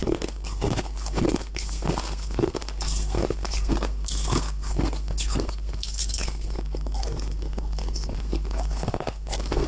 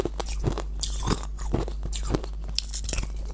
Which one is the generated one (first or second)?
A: first